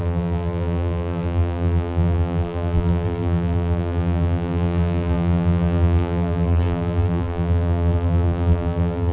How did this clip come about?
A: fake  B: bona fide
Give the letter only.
A